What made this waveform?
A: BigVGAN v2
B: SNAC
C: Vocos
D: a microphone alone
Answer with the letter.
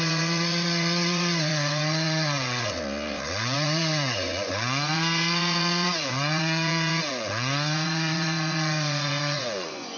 C